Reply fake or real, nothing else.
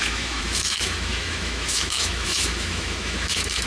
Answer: fake